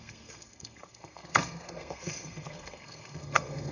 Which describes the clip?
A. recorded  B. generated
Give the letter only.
B